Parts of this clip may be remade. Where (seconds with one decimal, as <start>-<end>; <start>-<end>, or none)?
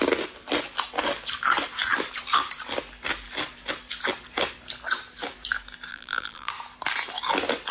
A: 5.9-6.5